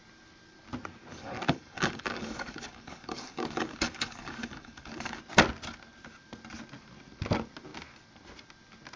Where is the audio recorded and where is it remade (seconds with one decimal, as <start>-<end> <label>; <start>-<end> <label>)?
0.0-1.1 recorded; 1.1-5.2 remade; 5.2-9.0 recorded